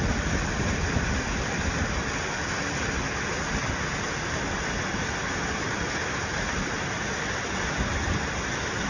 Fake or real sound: real